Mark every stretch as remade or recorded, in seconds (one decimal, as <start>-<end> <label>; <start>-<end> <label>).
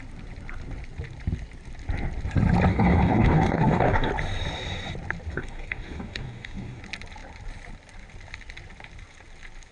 0.0-2.7 recorded; 2.7-4.1 remade; 4.1-5.3 recorded; 5.3-6.8 remade; 6.8-9.7 recorded